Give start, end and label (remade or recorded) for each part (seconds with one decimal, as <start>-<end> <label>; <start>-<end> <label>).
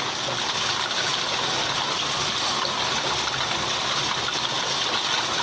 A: 0.0-5.4 recorded